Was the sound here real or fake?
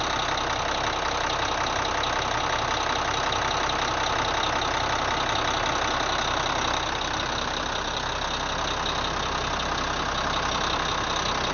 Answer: real